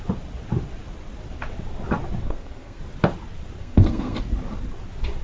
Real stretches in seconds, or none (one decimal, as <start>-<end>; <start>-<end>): 0.0-2.2; 2.8-3.6; 4.2-5.2

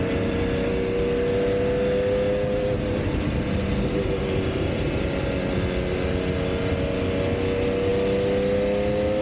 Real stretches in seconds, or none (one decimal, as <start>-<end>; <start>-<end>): 0.0-9.2

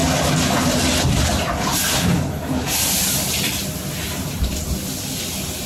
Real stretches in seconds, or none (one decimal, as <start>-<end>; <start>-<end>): 0.0-5.7

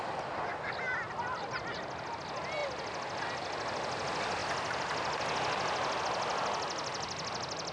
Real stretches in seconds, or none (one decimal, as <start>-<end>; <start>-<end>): 0.0-7.7